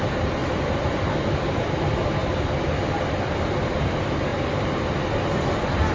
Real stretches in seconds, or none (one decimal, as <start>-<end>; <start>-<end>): 0.0-0.4; 1.2-5.9